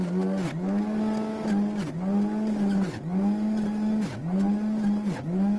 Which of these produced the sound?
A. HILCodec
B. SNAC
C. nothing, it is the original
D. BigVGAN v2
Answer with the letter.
C